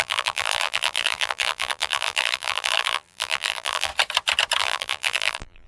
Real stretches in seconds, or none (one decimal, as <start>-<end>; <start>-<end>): 3.9-4.6